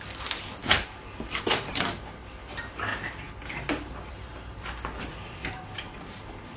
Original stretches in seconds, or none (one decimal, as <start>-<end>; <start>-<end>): 0.0-0.6; 1.9-6.6